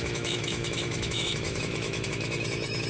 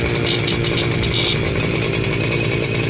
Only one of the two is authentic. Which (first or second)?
second